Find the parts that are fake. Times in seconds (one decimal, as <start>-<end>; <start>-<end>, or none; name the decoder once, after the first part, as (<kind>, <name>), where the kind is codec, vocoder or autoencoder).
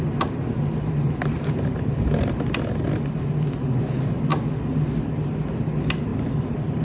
none